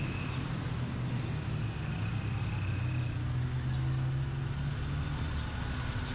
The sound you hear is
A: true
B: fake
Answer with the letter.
A